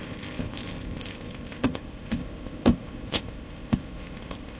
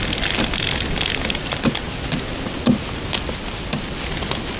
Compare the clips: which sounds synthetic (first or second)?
first